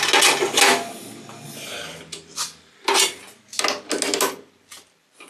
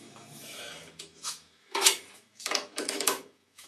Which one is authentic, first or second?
first